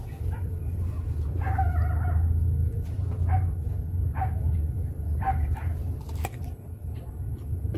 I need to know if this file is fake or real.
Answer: real